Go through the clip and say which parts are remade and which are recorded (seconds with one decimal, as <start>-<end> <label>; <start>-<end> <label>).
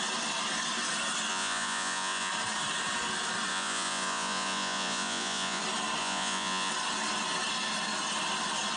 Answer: 0.0-1.3 recorded; 1.3-2.3 remade; 2.3-3.5 recorded; 3.5-5.6 remade; 5.6-6.0 recorded; 6.0-6.7 remade; 6.7-8.8 recorded